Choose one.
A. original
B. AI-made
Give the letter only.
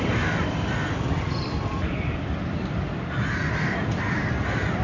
B